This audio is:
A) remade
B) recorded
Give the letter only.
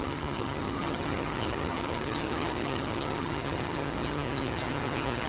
A